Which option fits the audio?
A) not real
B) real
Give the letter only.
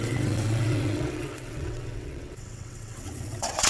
A